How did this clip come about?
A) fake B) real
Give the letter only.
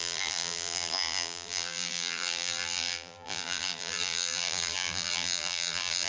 A